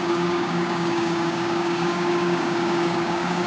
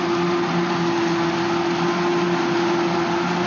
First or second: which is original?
second